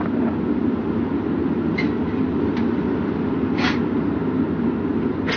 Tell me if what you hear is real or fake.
real